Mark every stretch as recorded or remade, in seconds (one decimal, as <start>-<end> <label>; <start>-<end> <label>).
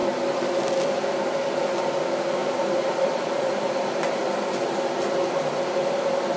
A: 0.0-0.6 remade; 0.6-2.4 recorded; 2.4-3.8 remade; 3.8-4.2 recorded; 4.2-5.4 remade; 5.4-6.4 recorded